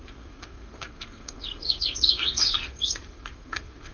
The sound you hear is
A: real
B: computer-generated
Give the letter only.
B